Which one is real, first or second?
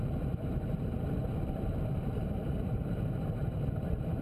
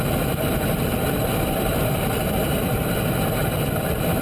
second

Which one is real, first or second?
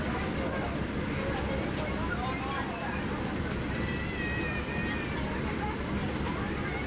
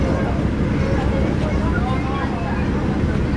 second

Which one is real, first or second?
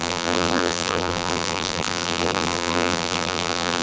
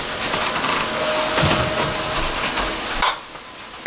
second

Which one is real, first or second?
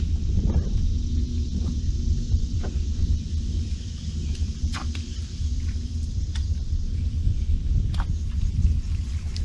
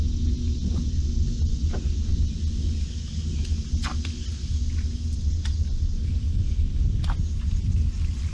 second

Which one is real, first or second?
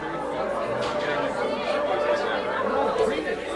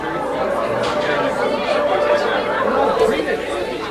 first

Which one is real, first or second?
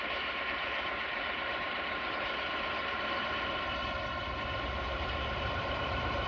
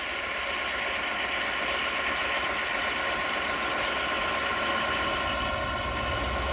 second